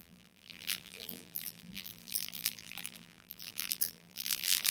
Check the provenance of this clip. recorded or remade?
remade